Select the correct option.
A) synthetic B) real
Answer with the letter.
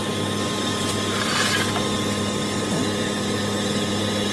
B